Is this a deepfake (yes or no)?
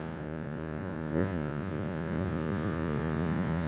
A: yes